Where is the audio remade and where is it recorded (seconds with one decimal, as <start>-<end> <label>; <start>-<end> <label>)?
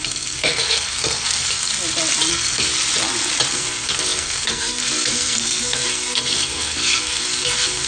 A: 0.0-1.7 remade; 1.7-2.3 recorded; 2.3-2.7 remade; 2.7-3.5 recorded; 3.5-7.9 remade